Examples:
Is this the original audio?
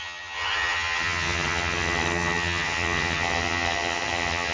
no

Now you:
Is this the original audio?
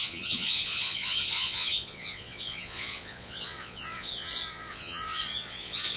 no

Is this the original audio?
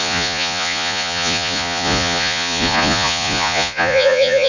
no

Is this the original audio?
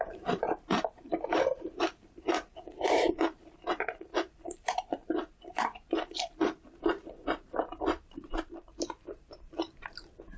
no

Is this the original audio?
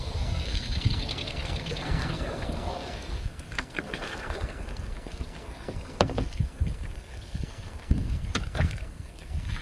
no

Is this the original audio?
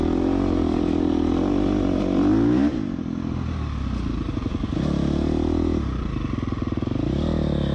yes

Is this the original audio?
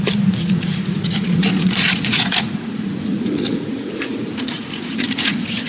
no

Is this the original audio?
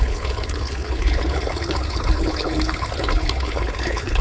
no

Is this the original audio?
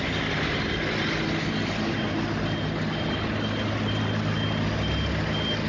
yes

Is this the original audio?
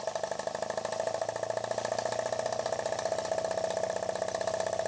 yes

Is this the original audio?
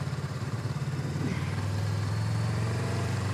no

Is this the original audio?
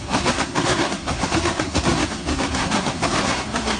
no